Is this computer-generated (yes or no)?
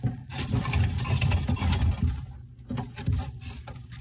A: no